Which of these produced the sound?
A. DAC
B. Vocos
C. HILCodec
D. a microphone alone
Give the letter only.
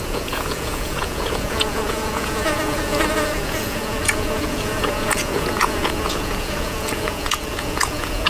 B